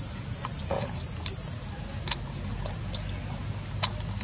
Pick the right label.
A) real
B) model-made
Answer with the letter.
A